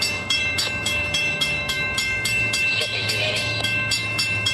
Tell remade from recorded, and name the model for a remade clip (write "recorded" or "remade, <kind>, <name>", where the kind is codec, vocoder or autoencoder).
remade, autoencoder, DAC-VAE